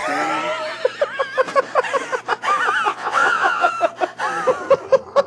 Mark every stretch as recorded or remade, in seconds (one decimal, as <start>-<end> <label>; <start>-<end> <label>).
0.0-2.9 recorded; 2.9-3.7 remade; 3.7-5.3 recorded